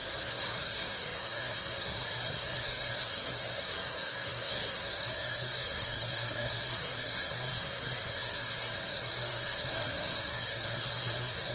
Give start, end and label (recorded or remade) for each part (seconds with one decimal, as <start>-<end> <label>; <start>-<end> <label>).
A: 0.0-11.5 remade